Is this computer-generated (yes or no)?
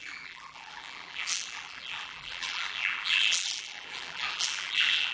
yes